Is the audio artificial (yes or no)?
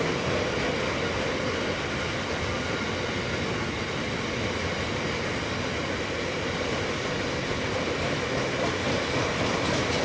no